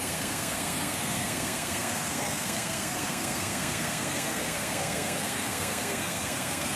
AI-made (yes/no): yes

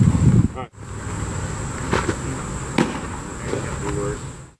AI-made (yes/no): no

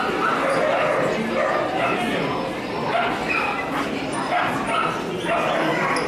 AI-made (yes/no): no